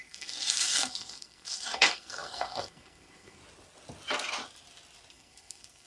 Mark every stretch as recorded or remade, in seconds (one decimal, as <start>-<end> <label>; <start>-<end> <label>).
0.0-3.4 remade; 3.4-5.1 recorded; 5.1-5.9 remade